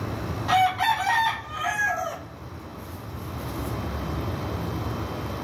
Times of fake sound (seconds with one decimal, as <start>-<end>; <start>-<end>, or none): none